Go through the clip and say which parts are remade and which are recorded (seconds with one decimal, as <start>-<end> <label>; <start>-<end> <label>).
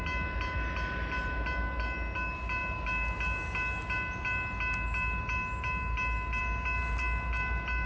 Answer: 0.0-7.9 recorded